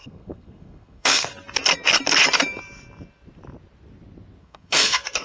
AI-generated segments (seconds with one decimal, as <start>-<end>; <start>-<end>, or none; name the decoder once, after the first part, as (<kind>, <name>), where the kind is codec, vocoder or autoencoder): 0.0-1.3 (codec, SNAC); 4.4-5.2